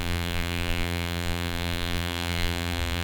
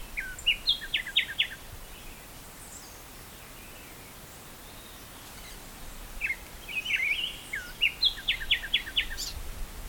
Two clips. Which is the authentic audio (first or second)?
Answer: second